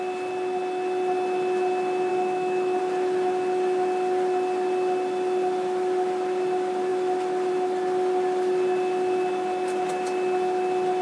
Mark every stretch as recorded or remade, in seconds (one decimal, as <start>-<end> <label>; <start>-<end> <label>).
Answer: 0.0-2.1 recorded; 2.1-2.8 remade; 2.8-11.0 recorded